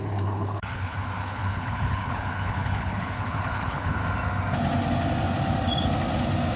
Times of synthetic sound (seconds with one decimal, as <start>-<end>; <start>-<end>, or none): 0.0-4.0